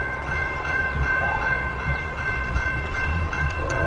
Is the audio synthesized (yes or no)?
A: yes